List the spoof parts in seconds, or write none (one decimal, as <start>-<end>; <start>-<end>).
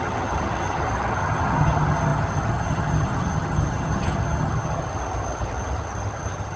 0.0-6.6